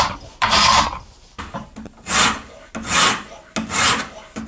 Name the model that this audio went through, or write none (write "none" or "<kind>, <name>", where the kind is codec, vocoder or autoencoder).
none